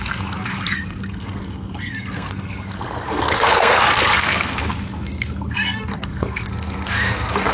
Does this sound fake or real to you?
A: fake